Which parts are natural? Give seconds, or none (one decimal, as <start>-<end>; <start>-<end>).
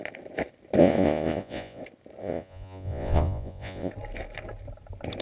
0.0-0.8; 1.8-2.2; 3.9-5.2